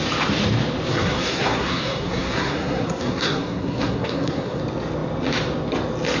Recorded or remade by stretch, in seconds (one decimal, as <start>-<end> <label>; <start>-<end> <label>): 0.0-0.9 recorded; 0.9-4.6 remade; 4.6-6.2 recorded